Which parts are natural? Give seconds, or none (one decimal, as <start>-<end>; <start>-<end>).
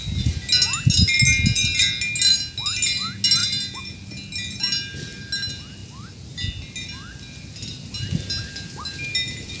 0.0-9.6